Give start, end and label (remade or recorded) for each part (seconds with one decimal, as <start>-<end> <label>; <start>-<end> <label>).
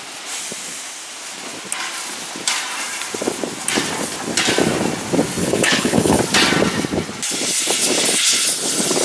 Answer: 0.0-5.4 recorded; 5.4-6.2 remade; 6.2-9.0 recorded